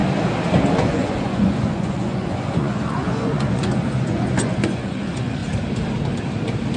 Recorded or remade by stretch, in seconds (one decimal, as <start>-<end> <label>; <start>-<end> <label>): 0.0-0.8 recorded; 0.8-5.4 remade; 5.4-6.8 recorded